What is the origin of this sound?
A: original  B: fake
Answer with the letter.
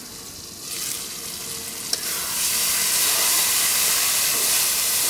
A